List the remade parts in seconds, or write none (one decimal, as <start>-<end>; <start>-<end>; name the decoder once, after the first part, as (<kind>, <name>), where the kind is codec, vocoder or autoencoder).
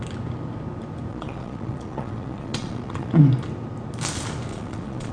1.1-3.2 (vocoder, Vocos); 4.5-5.1